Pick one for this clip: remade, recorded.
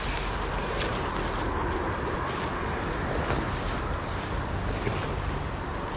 recorded